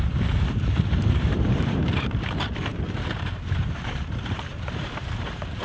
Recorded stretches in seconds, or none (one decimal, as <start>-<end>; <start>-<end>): none